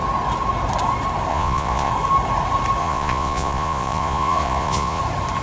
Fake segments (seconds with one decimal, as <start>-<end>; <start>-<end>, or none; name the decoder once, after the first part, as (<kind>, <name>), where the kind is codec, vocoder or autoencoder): 1.3-1.9 (vocoder, Vocos); 2.8-5.0